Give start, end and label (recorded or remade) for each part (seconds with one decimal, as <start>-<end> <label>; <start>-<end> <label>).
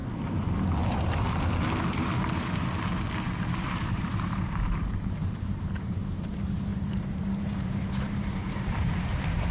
0.0-3.6 recorded; 3.6-9.5 remade